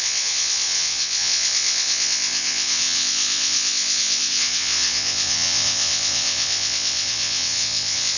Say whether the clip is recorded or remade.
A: remade